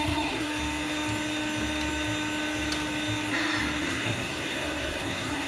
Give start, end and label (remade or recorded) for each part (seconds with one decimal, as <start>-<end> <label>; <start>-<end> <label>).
0.0-0.5 remade; 0.5-3.8 recorded; 3.8-5.5 remade